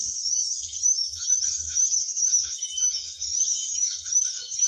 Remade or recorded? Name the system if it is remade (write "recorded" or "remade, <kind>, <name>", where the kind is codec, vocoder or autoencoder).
remade, autoencoder, DAC-VAE